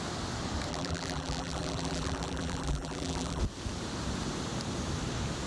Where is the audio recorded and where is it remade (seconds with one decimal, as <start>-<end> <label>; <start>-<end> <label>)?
0.0-0.7 recorded; 0.7-3.4 remade; 3.4-5.5 recorded